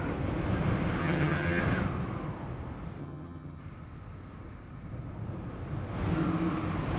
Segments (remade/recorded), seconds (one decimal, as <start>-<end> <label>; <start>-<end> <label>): 0.0-1.0 recorded; 1.0-1.6 remade; 1.6-3.0 recorded; 3.0-3.6 remade; 3.6-7.0 recorded